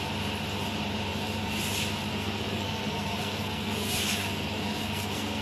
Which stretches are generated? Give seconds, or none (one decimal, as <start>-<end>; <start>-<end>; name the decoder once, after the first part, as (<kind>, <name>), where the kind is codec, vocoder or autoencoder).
1.1-1.6 (codec, SNAC); 2.1-5.4